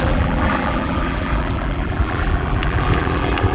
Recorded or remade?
remade